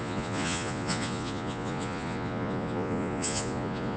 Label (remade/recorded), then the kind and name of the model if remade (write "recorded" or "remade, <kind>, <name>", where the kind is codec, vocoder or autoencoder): remade, vocoder, Vocos